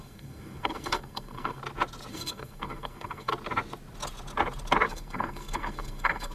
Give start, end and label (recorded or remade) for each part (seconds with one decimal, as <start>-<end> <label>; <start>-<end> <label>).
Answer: 0.0-1.6 remade; 1.6-2.1 recorded; 2.1-3.3 remade; 3.3-4.9 recorded; 4.9-6.3 remade